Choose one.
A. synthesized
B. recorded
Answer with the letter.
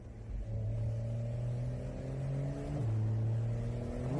B